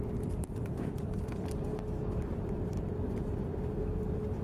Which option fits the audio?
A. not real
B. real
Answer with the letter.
A